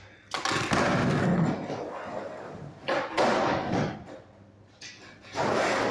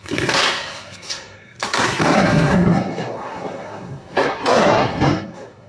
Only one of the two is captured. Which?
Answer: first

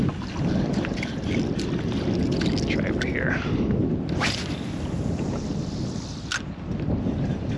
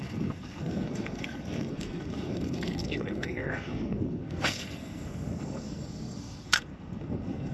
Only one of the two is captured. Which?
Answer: first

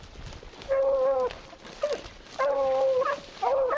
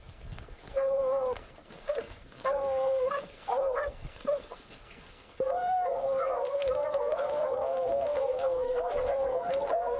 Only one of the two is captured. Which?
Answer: first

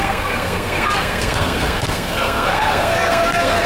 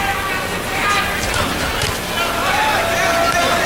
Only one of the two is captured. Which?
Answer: second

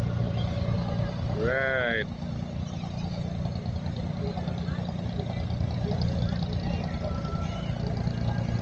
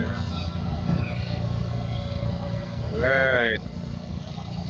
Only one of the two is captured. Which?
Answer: first